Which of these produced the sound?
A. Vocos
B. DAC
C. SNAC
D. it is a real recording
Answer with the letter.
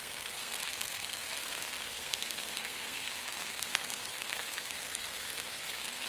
C